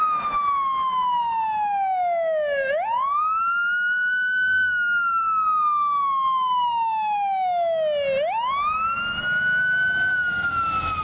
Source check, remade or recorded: recorded